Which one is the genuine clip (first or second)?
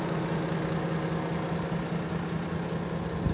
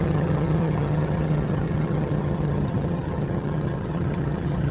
first